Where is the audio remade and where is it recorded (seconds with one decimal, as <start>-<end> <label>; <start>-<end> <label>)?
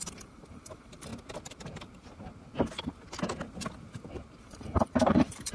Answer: 0.0-1.1 remade; 1.1-4.4 recorded; 4.4-5.5 remade